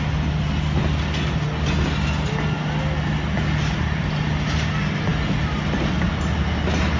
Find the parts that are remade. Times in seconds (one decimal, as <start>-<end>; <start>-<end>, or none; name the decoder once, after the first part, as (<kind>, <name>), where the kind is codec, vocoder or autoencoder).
none